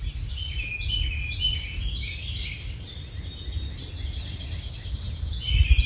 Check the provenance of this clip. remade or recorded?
recorded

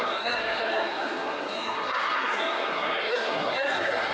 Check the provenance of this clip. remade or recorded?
remade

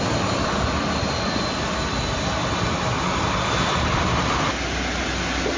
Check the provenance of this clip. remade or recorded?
recorded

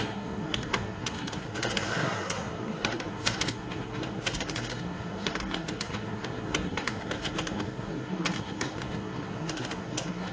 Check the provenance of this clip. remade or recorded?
remade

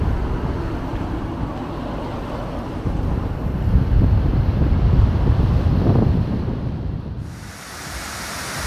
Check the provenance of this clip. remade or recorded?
recorded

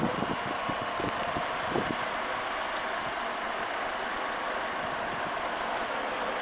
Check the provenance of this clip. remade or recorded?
recorded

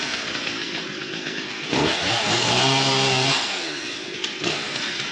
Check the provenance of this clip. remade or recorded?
remade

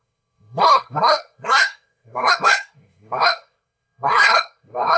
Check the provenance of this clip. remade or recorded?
remade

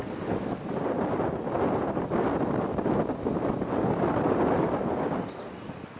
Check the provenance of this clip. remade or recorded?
recorded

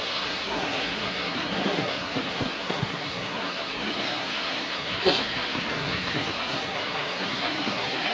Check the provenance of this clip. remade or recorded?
remade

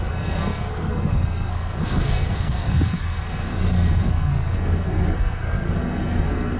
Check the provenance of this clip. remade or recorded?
remade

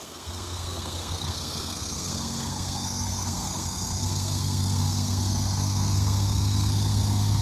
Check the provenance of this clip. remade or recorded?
remade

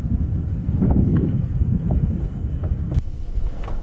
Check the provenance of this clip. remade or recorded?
remade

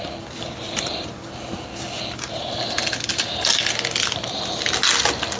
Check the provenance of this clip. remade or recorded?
recorded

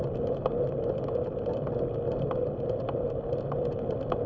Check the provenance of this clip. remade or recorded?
recorded